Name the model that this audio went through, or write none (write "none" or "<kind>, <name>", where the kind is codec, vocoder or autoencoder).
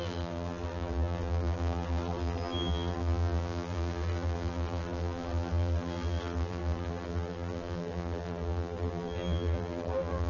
vocoder, BigVGAN v2